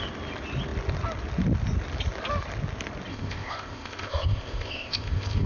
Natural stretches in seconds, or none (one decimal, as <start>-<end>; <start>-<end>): 0.0-3.1